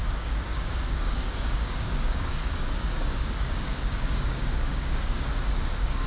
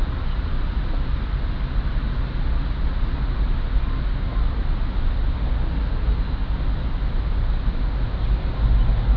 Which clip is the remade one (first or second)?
first